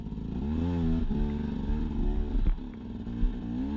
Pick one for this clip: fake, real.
real